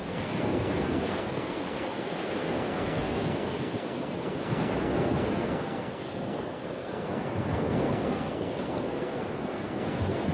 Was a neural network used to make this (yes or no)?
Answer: yes